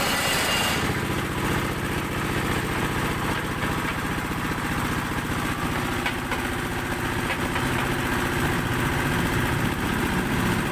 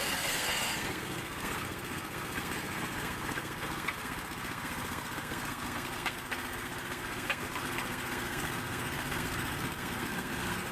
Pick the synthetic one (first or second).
second